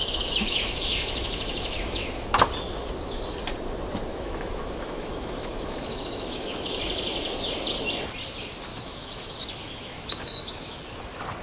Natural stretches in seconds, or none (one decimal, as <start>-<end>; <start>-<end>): 2.3-4.1; 6.8-8.7; 11.0-11.4

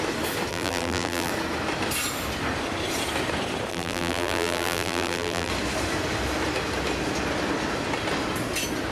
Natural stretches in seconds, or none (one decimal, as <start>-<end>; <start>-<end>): 0.0-0.5; 1.3-3.7; 5.5-8.9

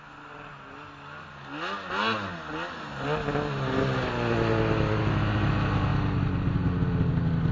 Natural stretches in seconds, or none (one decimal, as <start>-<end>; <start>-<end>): 0.0-7.5

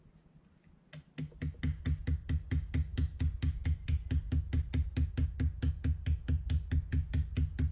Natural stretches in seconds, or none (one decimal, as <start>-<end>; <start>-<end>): 0.0-7.7

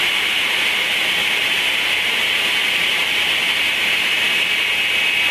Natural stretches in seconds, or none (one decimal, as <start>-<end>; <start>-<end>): 1.7-2.6; 4.3-5.3

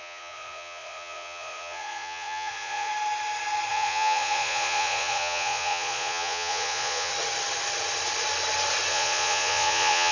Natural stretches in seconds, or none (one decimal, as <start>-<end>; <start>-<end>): 2.9-3.7; 7.1-8.9